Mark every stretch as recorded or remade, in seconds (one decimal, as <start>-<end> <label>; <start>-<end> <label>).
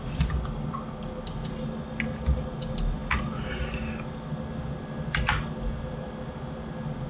0.0-7.1 recorded